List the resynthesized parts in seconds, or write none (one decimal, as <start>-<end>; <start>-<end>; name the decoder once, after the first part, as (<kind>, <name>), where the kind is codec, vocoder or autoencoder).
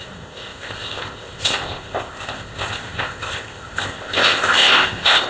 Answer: 0.0-5.3 (codec, ZipCodec)